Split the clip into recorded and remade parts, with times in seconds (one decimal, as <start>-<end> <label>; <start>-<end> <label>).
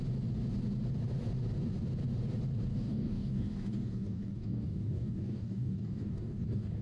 0.0-2.7 recorded; 2.7-6.8 remade